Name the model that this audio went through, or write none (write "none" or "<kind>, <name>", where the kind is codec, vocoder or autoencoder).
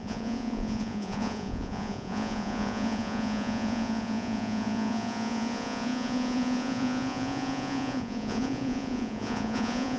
vocoder, Vocos